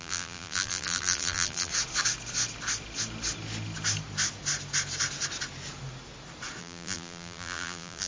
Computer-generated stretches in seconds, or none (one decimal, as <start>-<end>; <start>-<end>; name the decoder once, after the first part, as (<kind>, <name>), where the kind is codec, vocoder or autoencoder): 0.0-1.7 (vocoder, BigVGAN v2); 6.6-8.1